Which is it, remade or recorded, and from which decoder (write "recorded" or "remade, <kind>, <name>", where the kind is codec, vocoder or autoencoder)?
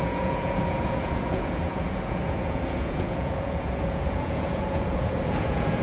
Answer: remade, vocoder, Vocos